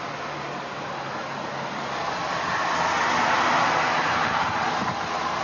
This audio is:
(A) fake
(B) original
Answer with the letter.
B